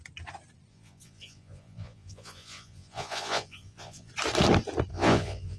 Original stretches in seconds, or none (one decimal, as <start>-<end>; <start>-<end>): 0.0-0.7; 4.1-4.9